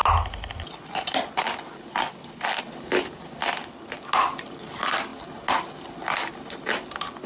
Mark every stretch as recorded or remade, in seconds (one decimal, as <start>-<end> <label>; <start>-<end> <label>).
0.0-7.3 recorded

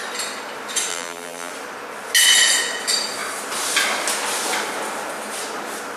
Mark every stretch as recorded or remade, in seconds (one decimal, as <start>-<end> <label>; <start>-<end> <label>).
0.0-0.9 recorded; 0.9-1.5 remade; 1.5-6.0 recorded

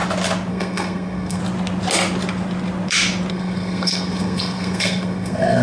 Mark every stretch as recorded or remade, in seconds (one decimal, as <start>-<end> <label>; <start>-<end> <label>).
0.0-0.5 recorded; 0.5-1.4 remade; 1.4-3.3 recorded; 3.3-5.6 remade

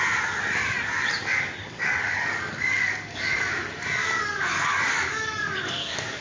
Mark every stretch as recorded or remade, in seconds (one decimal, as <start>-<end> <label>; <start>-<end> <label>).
0.0-1.6 recorded; 1.6-3.6 remade; 3.6-4.0 recorded; 4.0-6.2 remade

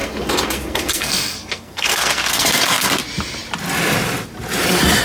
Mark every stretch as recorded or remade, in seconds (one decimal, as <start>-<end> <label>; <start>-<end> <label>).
0.0-3.0 remade; 3.0-5.0 recorded